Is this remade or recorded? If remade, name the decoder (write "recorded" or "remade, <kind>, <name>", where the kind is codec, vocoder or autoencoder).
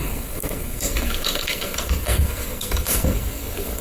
remade, codec, SNAC